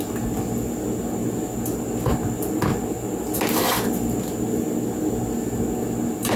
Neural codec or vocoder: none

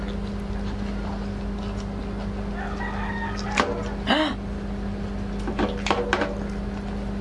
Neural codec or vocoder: none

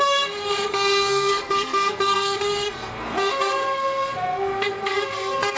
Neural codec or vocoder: codec, SNAC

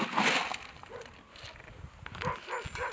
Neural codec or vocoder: none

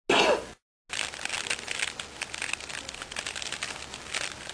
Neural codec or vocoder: none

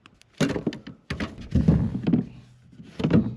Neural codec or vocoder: none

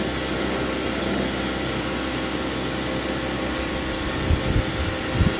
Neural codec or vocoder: none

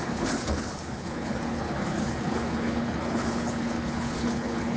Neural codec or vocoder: codec, HILCodec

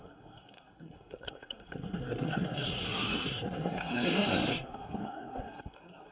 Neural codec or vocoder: codec, SNAC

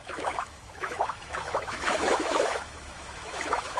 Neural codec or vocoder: autoencoder, DAC-VAE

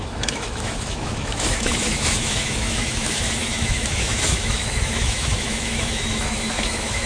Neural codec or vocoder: autoencoder, DAC-VAE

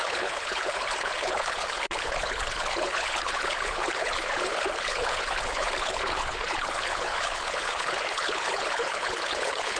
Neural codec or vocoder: codec, HILCodec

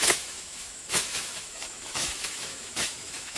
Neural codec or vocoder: autoencoder, DAC-VAE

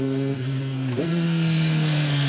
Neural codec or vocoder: codec, SNAC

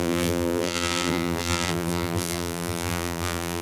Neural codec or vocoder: vocoder, BigVGAN v2